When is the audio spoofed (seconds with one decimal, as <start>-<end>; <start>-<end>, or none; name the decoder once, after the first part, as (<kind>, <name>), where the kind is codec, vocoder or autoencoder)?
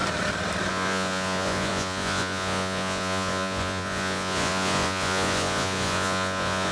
0.7-6.7 (vocoder, Vocos)